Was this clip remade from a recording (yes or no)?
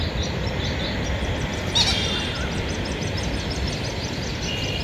no